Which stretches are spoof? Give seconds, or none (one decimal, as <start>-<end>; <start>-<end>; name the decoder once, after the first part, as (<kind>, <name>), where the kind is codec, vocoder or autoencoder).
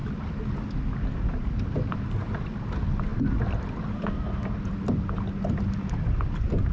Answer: none